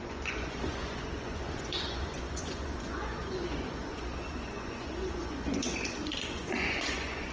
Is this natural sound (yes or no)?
no